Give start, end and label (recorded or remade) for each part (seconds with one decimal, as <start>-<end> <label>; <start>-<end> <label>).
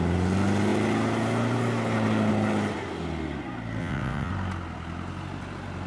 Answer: 0.0-3.8 recorded; 3.8-4.3 remade; 4.3-5.9 recorded